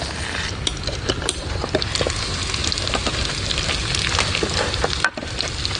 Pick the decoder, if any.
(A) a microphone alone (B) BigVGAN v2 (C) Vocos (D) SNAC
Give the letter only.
A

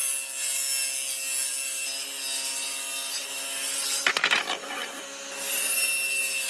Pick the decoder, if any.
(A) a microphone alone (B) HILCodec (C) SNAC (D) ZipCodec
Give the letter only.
A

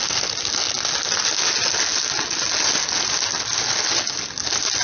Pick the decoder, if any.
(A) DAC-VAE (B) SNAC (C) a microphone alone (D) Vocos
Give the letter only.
C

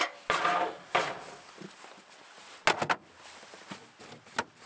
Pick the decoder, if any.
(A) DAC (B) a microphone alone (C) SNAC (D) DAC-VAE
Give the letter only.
B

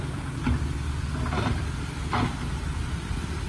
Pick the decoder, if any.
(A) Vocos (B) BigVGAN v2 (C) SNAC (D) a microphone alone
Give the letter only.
D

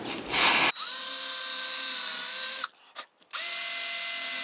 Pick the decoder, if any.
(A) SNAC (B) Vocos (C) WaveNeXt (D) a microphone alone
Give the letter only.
D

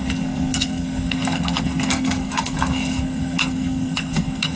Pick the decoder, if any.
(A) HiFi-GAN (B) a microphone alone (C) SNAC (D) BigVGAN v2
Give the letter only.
C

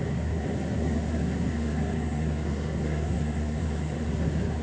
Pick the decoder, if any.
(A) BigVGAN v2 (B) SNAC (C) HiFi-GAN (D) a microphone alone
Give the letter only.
B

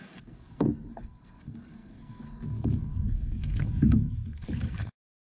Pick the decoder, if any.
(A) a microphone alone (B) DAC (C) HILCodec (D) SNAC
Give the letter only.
D